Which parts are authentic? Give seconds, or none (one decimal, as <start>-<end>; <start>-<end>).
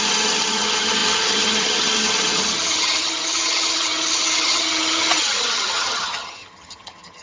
none